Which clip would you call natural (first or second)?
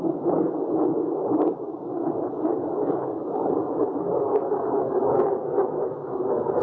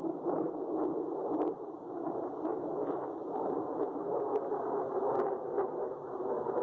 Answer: second